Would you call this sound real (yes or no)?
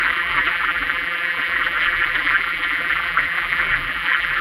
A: no